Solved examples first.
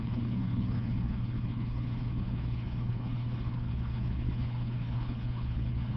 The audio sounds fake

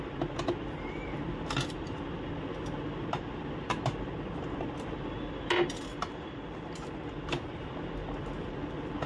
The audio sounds real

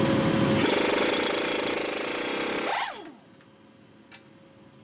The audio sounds real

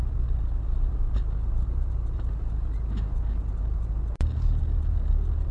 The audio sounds real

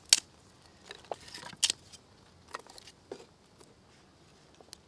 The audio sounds real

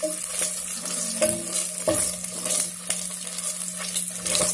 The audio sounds real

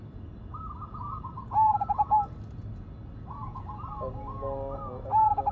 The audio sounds real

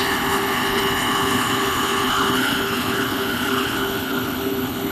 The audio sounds fake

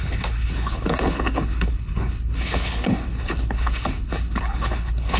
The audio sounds fake